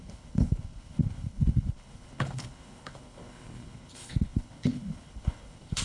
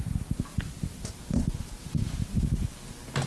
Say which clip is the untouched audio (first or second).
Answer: second